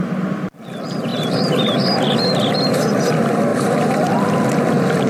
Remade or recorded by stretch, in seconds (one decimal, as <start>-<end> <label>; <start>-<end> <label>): 0.0-1.1 recorded; 1.1-3.1 remade; 3.1-3.5 recorded; 3.5-4.1 remade; 4.1-5.1 recorded